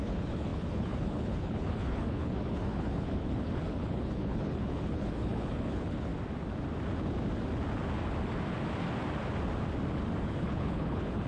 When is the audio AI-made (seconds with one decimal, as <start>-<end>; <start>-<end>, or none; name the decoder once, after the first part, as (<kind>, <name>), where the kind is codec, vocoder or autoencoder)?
0.0-6.1 (codec, HILCodec); 10.2-11.3